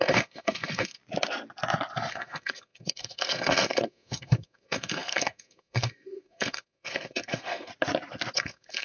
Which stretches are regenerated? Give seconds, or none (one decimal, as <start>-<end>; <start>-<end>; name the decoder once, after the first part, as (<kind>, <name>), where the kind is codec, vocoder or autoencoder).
0.0-1.0 (codec, SNAC); 2.1-7.7; 8.3-8.8